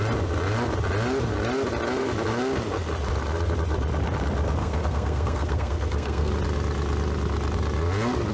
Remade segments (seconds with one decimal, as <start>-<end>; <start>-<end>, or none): 4.6-6.3